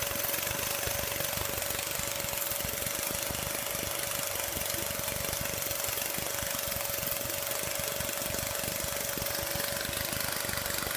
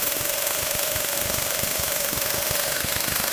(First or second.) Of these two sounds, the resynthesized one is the second